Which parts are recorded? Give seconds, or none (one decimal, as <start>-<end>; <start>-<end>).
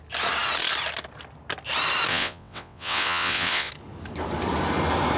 0.0-2.1; 3.7-5.2